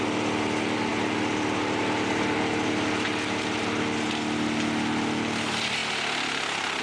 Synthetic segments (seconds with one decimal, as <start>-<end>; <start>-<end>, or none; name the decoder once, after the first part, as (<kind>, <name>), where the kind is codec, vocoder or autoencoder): none